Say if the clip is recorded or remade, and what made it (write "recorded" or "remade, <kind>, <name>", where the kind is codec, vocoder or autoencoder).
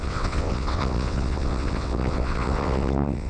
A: remade, vocoder, WaveNeXt